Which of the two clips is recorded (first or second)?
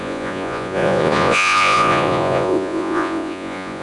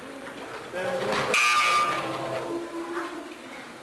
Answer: second